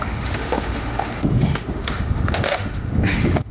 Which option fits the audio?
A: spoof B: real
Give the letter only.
A